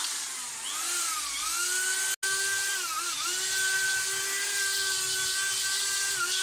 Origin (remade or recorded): recorded